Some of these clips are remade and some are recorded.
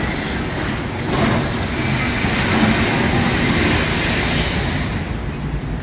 recorded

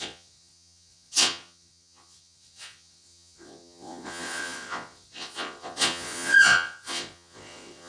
remade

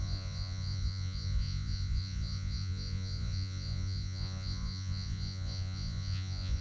remade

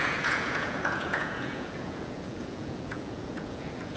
remade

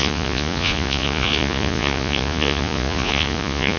remade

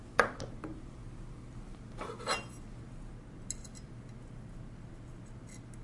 recorded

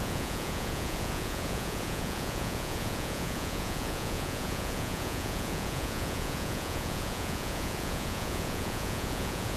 remade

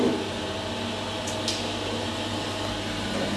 recorded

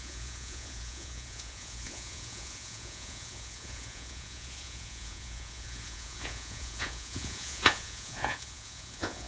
remade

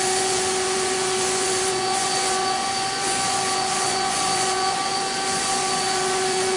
remade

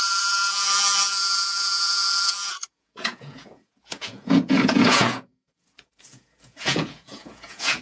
remade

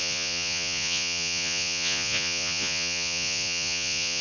remade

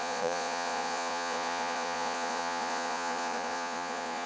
remade